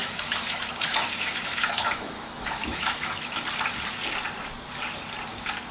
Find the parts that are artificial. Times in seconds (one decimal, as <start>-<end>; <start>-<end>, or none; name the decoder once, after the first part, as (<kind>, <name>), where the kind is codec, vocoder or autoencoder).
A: 0.0-3.4 (autoencoder, DAC-VAE)